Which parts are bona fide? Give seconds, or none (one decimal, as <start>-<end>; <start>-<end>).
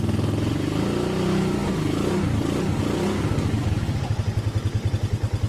0.0-5.5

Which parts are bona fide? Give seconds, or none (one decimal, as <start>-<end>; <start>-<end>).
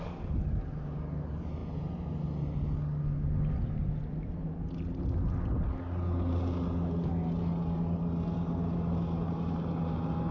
0.0-10.3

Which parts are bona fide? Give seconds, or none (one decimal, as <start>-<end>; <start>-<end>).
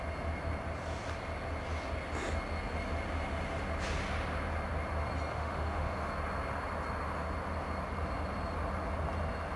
0.0-5.3; 6.1-9.6